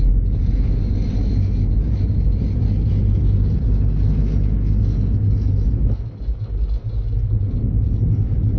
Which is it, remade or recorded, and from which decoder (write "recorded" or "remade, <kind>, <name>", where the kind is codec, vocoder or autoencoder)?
recorded